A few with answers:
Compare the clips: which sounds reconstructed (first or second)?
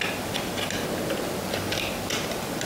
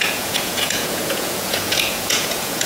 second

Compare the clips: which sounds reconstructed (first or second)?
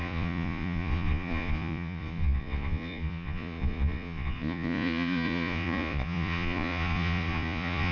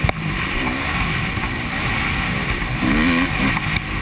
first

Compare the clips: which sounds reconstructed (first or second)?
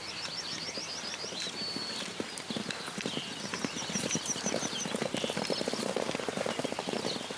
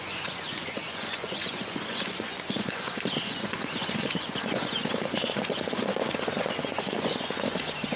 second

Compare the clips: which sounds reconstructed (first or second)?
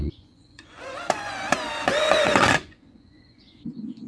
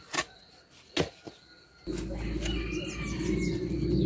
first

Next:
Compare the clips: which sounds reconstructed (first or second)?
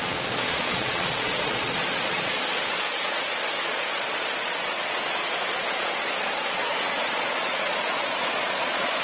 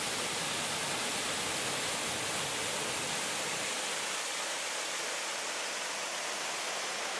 first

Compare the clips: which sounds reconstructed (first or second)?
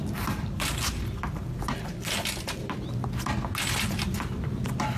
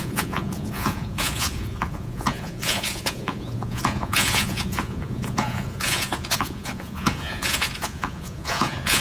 second